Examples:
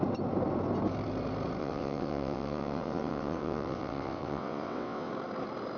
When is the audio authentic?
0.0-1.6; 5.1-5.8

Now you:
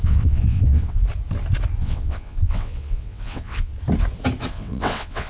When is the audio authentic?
1.0-1.8; 3.7-4.5